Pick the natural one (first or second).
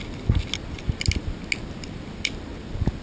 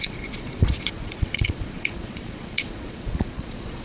first